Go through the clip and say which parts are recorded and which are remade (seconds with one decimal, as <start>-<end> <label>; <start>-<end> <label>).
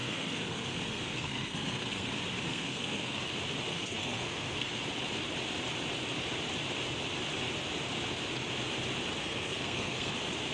0.0-2.1 remade; 2.1-2.5 recorded; 2.5-3.2 remade; 3.2-3.7 recorded; 3.7-4.8 remade; 4.8-9.2 recorded; 9.2-10.1 remade; 10.1-10.5 recorded